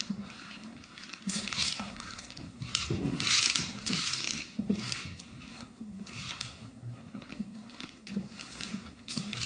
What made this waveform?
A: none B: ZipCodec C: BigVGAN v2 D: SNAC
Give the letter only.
D